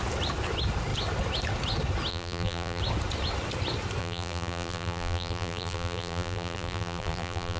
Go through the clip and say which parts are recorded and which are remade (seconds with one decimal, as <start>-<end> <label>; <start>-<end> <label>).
0.0-2.1 recorded; 2.1-2.8 remade; 2.8-4.0 recorded; 4.0-7.6 remade